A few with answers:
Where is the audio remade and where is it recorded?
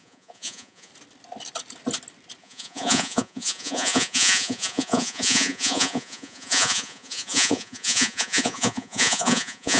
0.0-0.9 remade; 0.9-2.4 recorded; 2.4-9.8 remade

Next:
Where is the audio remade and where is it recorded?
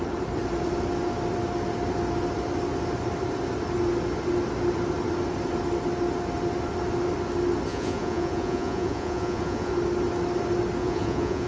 0.0-7.7 recorded; 7.7-9.7 remade; 9.7-10.8 recorded; 10.8-11.5 remade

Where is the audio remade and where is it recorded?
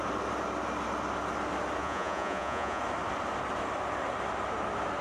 0.0-1.8 recorded; 1.8-2.8 remade; 2.8-5.0 recorded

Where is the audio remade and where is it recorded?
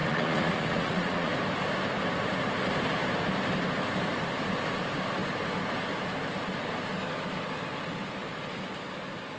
0.0-1.3 remade; 1.3-9.4 recorded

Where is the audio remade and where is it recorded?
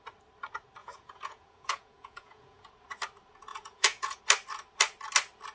0.0-0.8 recorded; 0.8-2.7 remade; 2.7-3.5 recorded; 3.5-4.2 remade; 4.2-5.5 recorded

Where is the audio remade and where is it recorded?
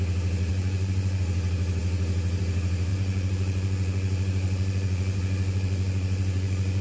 0.0-0.5 recorded; 0.5-1.2 remade; 1.2-2.9 recorded; 2.9-6.8 remade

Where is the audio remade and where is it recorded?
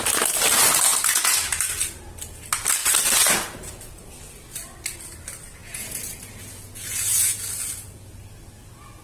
0.0-0.9 recorded; 0.9-1.5 remade; 1.5-5.6 recorded; 5.6-7.4 remade; 7.4-9.0 recorded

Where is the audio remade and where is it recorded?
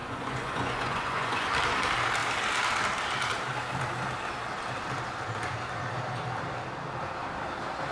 0.0-1.5 remade; 1.5-7.9 recorded